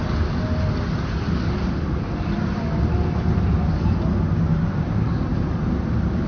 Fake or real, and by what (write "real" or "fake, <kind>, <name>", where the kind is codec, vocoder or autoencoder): real